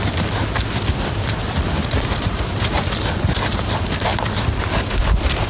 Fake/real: fake